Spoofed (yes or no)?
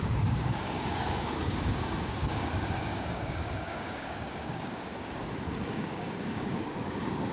yes